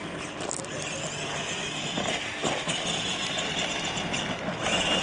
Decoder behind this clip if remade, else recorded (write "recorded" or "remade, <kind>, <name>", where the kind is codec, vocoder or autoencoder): recorded